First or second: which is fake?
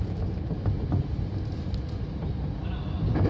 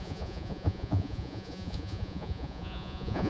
second